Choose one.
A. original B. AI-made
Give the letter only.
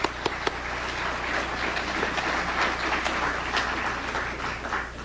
A